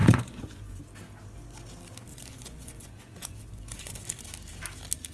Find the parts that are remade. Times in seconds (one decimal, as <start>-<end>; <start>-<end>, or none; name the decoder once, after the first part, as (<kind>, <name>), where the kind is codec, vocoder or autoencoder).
0.0-0.8 (vocoder, Vocos); 2.1-4.0